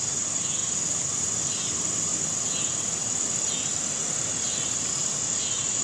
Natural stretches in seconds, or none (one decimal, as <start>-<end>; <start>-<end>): 0.0-5.8

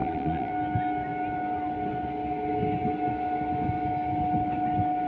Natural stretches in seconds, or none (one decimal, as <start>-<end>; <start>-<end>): 0.5-5.1

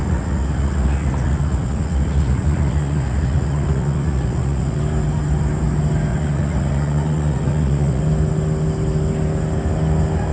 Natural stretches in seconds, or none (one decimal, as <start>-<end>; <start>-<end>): 4.8-6.1; 8.0-10.3

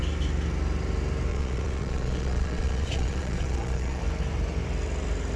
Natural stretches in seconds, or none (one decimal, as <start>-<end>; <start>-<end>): 0.0-1.3; 4.0-5.4

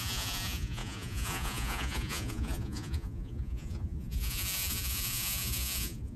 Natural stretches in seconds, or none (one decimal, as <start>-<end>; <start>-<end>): none

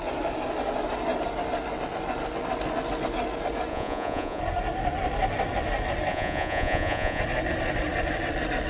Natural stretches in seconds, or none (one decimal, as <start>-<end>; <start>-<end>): 0.0-3.7; 4.4-6.1; 7.2-8.7